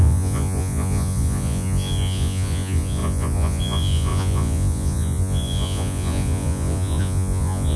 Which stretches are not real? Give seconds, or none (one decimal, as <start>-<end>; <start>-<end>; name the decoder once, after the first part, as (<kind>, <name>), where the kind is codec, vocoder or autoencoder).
0.0-7.8 (vocoder, Vocos)